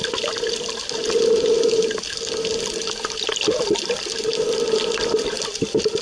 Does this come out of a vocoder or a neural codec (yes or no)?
no